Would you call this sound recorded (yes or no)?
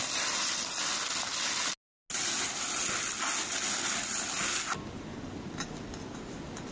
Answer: yes